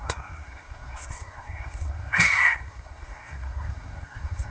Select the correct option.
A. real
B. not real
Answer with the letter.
B